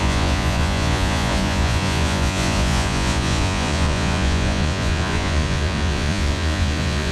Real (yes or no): no